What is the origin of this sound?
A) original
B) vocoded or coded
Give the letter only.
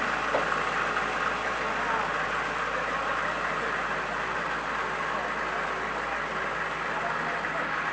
A